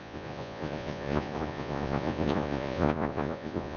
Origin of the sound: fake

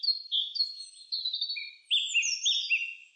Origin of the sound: real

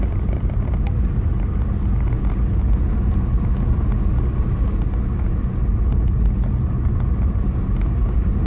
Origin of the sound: real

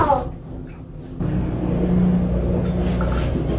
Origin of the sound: real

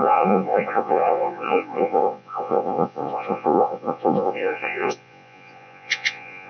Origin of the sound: fake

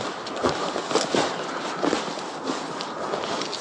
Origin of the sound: real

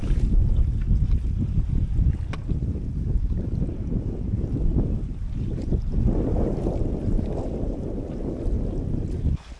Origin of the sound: real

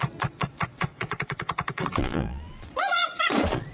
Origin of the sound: fake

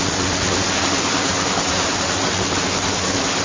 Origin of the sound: real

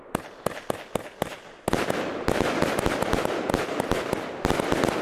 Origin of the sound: real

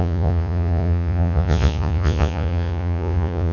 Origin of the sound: fake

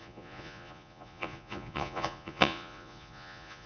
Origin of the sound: fake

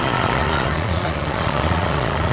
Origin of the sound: fake